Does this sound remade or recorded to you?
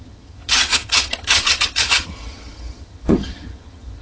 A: remade